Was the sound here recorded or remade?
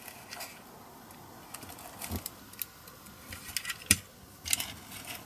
recorded